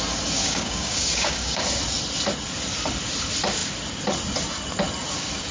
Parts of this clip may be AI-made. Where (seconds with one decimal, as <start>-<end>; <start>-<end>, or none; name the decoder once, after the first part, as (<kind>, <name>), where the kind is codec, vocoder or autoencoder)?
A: 0.4-1.6 (codec, DAC)